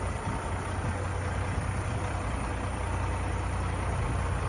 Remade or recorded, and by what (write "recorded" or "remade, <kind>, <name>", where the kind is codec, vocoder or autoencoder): recorded